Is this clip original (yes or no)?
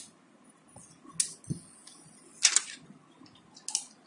yes